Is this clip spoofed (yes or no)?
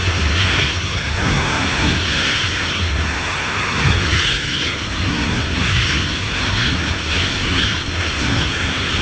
yes